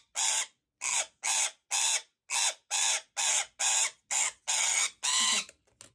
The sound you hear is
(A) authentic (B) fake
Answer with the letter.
A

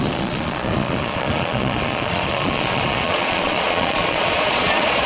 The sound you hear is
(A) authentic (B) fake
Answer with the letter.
B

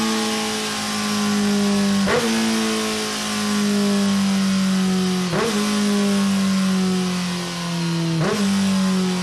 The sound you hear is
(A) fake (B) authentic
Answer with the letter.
B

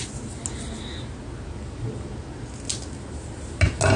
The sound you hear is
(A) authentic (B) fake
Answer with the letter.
A